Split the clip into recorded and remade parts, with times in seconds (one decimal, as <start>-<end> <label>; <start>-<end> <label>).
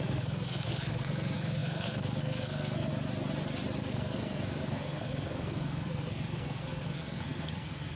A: 0.0-2.9 remade; 2.9-3.8 recorded; 3.8-8.0 remade